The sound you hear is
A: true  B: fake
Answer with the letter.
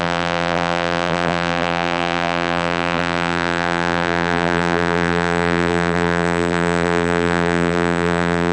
B